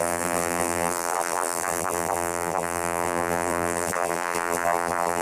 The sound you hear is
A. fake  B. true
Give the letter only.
A